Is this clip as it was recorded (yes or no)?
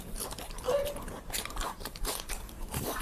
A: no